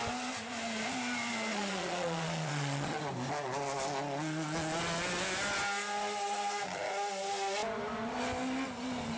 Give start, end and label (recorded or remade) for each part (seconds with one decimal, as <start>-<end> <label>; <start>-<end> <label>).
0.0-1.5 recorded; 1.5-3.0 remade; 3.0-9.2 recorded